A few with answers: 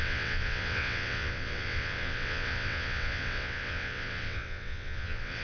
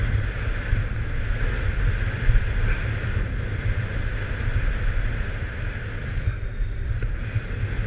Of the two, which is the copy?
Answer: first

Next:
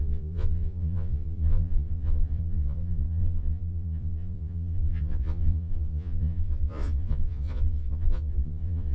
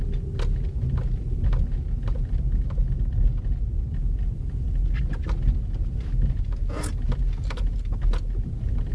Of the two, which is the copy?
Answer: first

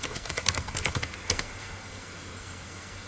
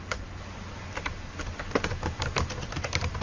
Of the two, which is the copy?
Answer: first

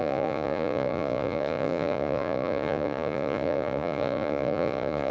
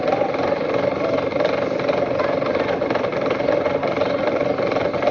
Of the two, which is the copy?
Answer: first